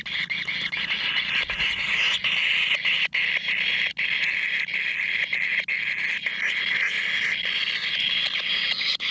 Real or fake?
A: real